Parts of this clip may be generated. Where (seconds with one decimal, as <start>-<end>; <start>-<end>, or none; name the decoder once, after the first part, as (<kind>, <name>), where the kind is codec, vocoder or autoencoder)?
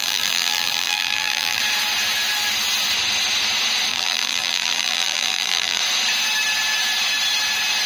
0.0-1.6 (vocoder, BigVGAN v2); 3.9-5.8